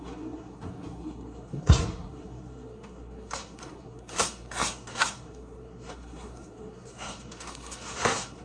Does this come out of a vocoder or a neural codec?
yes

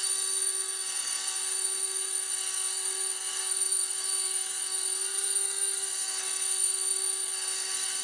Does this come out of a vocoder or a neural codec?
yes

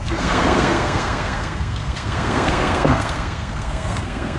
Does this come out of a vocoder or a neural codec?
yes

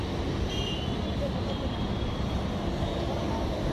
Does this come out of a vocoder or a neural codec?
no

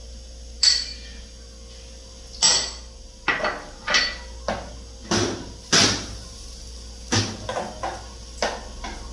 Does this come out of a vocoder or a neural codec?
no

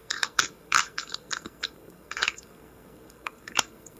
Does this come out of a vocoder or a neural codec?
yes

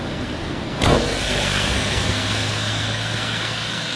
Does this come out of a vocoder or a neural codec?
yes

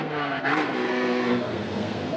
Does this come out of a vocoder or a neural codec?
yes